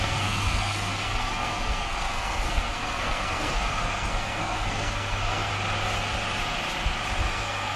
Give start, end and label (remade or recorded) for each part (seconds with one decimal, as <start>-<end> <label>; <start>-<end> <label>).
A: 0.0-5.5 remade; 5.5-7.3 recorded; 7.3-7.8 remade